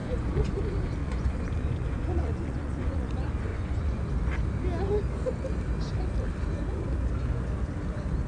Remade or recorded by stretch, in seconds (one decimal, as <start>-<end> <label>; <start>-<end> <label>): 0.0-0.6 remade; 0.6-1.0 recorded; 1.0-3.1 remade; 3.1-3.5 recorded; 3.5-4.0 remade; 4.0-8.3 recorded